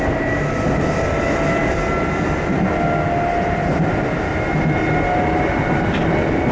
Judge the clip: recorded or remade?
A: recorded